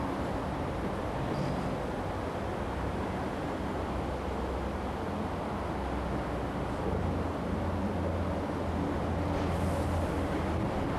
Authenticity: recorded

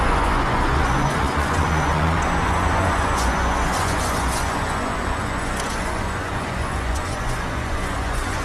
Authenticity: remade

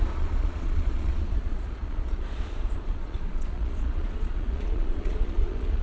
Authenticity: remade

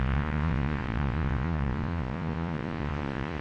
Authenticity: remade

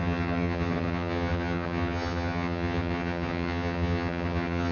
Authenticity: remade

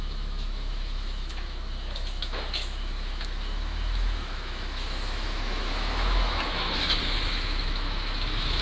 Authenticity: remade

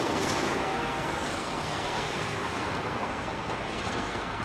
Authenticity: remade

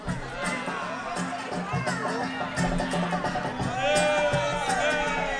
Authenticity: recorded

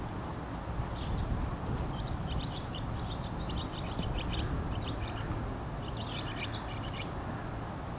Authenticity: recorded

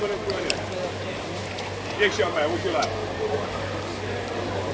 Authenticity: recorded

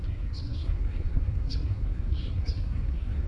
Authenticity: remade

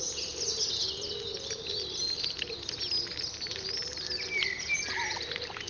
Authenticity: recorded